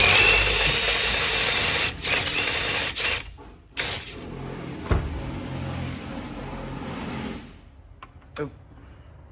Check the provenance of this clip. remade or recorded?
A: recorded